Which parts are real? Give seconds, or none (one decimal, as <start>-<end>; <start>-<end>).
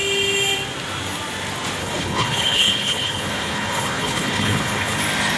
0.0-1.8; 5.0-5.4